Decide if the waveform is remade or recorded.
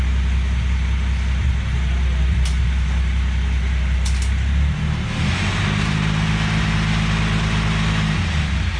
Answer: recorded